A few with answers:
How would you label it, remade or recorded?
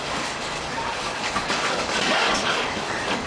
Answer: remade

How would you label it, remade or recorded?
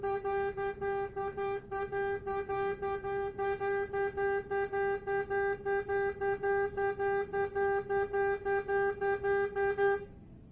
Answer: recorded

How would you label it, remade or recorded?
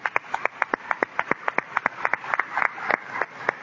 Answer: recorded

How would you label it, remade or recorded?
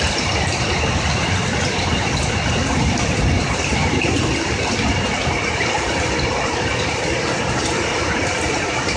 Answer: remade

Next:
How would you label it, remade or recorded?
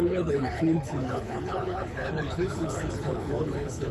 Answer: remade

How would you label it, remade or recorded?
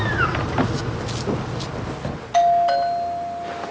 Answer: recorded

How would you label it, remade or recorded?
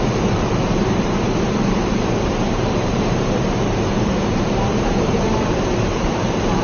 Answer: remade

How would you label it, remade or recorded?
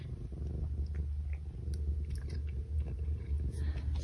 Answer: recorded